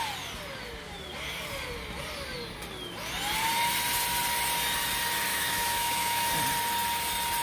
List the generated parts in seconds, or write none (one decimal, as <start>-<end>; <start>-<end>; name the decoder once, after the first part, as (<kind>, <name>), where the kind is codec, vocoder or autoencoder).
5.3-6.3 (autoencoder, DAC-VAE)